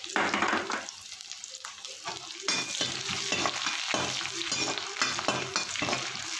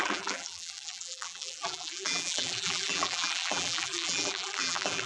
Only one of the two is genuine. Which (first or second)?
first